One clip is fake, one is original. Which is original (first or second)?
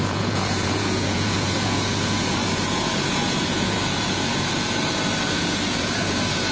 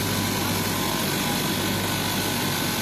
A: second